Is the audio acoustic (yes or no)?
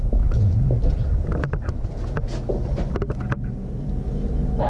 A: yes